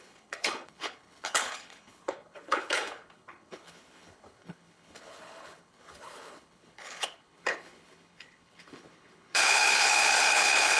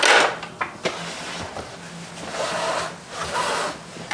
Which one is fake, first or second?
first